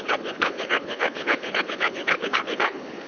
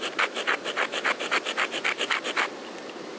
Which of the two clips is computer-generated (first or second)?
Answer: first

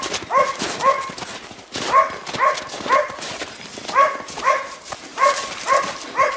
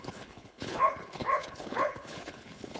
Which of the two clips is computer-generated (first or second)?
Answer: second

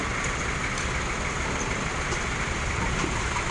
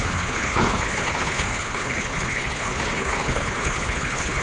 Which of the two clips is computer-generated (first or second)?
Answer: second